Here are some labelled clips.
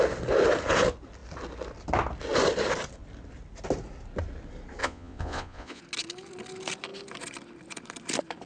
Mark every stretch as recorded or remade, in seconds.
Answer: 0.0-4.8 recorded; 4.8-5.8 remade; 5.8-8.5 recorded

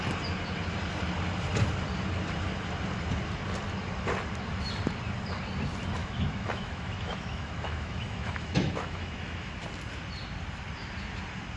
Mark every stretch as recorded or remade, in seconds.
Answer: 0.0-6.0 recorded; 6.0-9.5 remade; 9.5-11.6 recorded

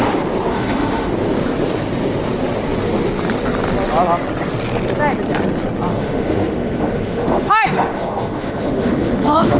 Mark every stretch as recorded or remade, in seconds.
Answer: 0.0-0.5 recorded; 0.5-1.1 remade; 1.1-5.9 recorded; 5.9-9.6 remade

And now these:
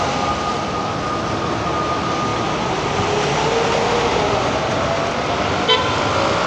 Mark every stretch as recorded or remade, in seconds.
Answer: 0.0-6.5 recorded

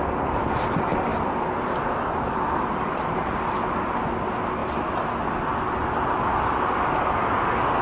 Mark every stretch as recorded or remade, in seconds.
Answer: 0.0-7.8 recorded